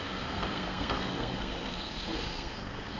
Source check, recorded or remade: remade